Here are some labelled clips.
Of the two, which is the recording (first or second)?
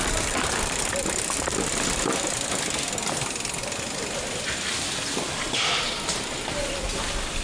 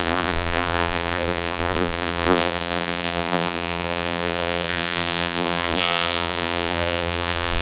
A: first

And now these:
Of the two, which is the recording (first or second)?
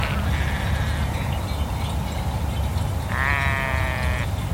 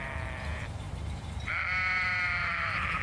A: first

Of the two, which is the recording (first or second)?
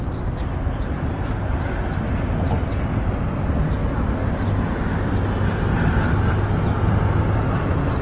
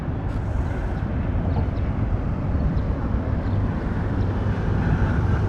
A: first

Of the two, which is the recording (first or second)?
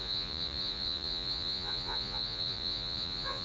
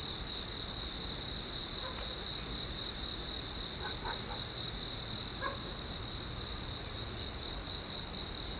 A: second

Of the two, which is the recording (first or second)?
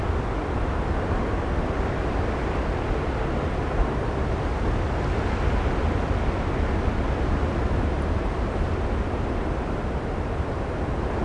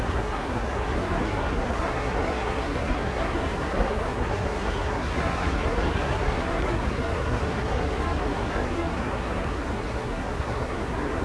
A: first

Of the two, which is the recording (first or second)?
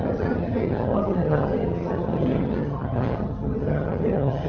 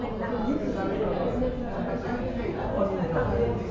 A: second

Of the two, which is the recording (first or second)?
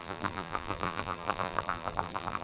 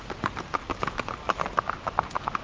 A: second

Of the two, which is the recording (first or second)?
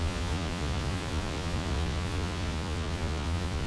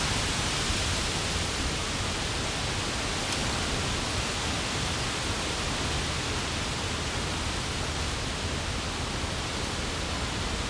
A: second